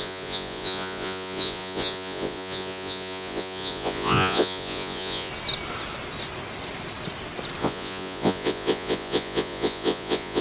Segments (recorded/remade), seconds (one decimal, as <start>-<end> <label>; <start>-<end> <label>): 0.0-5.3 remade; 5.3-7.6 recorded; 7.6-10.4 remade